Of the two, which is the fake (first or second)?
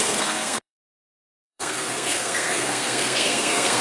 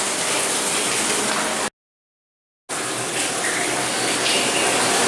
first